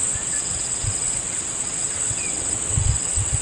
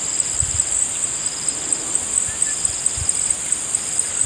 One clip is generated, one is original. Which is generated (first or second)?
first